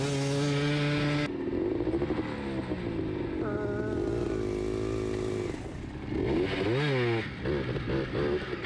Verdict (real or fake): real